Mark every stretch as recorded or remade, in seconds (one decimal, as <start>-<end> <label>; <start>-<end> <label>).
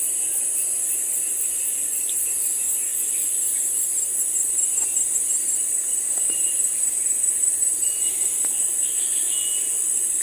0.0-10.2 recorded